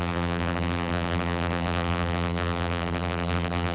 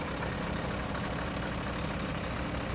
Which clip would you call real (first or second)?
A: second